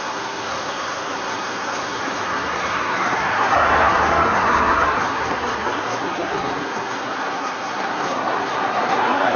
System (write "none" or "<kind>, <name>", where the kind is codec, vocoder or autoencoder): codec, SNAC